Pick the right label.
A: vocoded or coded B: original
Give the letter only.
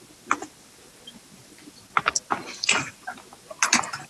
B